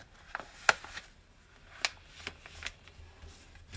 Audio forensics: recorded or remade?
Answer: recorded